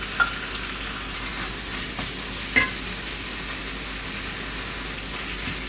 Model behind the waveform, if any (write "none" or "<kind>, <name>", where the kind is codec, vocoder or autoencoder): none